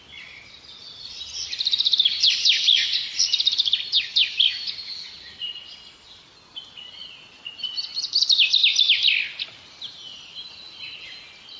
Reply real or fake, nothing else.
real